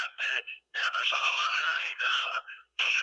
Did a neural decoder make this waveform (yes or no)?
yes